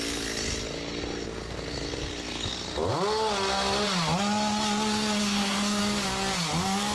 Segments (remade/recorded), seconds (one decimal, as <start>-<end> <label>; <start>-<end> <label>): 0.0-5.2 recorded; 5.2-5.8 remade; 5.8-6.9 recorded